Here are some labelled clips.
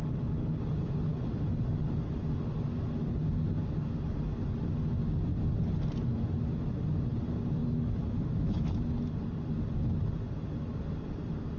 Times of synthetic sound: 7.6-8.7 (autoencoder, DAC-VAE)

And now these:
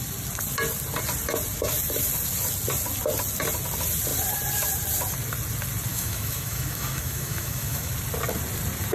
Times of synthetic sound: 5.9-7.9 (autoencoder, DAC-VAE)

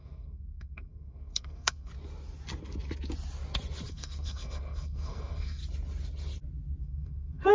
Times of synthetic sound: 0.0-1.9 (codec, SNAC); 3.9-5.6; 6.8-7.5

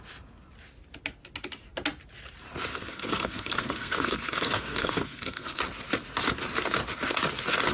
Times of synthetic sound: 2.7-5.6 (codec, SNAC)

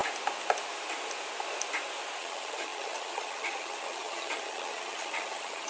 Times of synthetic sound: 2.2-5.7 (vocoder, HiFi-GAN)